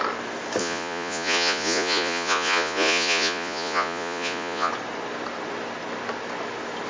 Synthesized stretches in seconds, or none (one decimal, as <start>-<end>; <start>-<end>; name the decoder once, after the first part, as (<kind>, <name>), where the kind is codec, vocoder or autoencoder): 0.6-4.7 (vocoder, Vocos)